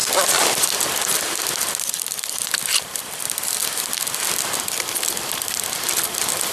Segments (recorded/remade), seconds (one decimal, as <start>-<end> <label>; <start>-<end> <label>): 0.0-3.9 remade; 3.9-6.5 recorded